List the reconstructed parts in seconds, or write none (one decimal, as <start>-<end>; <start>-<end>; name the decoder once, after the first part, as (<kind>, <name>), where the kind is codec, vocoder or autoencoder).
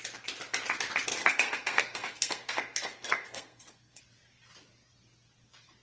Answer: 1.1-4.0 (codec, SNAC)